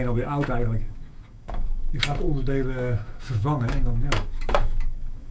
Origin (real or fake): fake